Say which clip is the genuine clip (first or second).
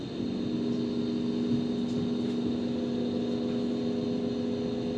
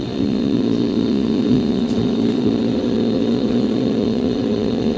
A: first